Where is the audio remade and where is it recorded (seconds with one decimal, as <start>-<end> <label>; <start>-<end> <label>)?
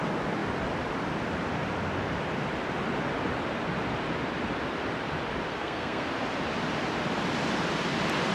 0.0-5.5 recorded; 5.5-6.1 remade; 6.1-8.3 recorded